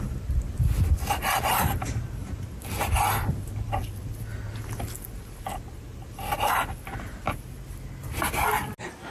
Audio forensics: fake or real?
real